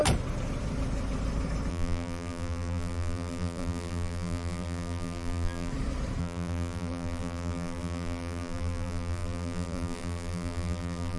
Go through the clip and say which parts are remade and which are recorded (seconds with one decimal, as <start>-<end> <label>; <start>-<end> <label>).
0.0-1.7 recorded; 1.7-5.7 remade; 5.7-6.2 recorded; 6.2-11.2 remade